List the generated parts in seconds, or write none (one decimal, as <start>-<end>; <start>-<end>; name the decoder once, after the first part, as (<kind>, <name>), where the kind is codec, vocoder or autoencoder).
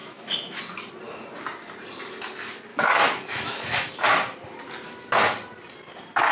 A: 0.0-0.6 (autoencoder, DAC-VAE); 2.7-3.9